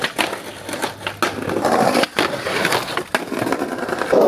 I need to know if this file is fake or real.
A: real